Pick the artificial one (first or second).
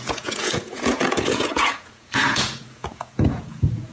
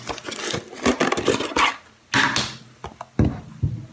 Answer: first